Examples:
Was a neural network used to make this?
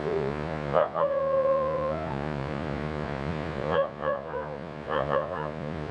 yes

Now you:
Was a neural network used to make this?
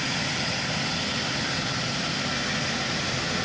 no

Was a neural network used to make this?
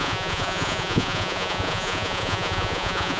yes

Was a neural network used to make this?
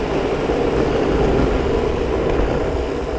no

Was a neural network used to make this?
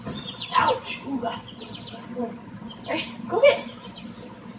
no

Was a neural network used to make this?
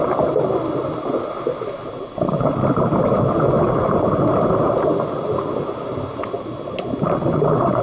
no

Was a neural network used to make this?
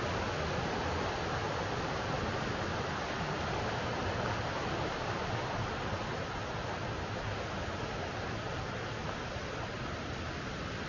no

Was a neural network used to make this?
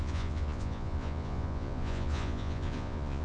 yes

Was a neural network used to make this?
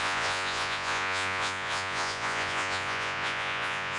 yes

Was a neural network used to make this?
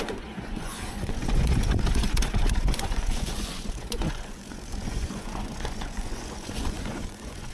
yes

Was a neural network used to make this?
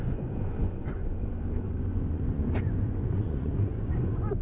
yes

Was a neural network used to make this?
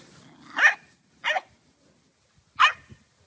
no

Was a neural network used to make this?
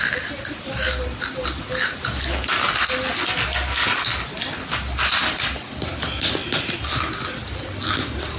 no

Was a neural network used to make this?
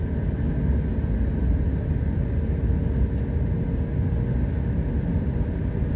no